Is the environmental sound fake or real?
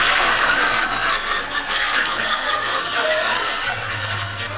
fake